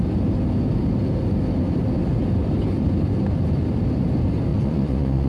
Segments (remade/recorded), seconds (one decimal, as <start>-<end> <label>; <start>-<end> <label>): 0.0-4.5 recorded; 4.5-5.3 remade